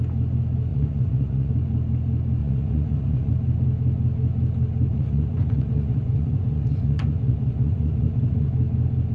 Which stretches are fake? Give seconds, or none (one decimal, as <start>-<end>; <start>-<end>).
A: 0.7-1.5; 2.4-3.3; 4.9-8.5